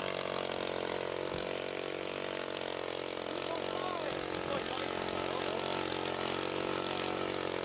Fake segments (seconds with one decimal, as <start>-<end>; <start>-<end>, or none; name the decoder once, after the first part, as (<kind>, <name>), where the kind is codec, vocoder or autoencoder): none